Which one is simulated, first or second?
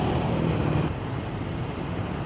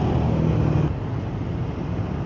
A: first